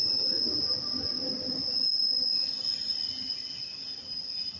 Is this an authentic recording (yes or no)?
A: yes